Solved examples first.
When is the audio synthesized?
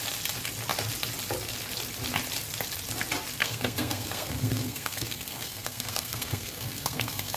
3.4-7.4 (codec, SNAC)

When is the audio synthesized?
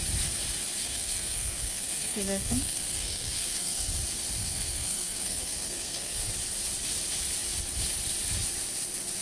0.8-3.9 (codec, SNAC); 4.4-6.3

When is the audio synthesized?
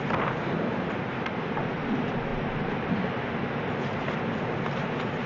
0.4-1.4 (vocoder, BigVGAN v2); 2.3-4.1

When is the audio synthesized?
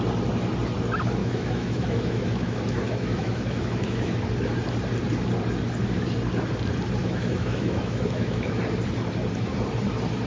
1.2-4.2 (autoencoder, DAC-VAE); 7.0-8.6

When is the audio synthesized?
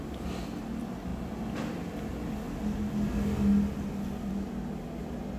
none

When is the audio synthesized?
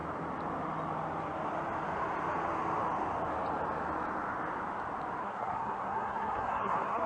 5.2-7.1 (codec, SNAC)